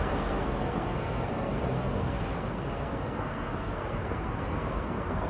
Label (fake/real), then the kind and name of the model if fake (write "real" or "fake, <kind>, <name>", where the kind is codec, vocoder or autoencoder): fake, codec, SNAC